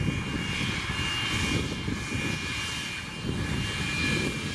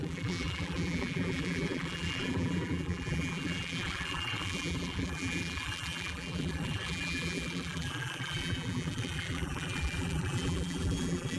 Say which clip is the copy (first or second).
second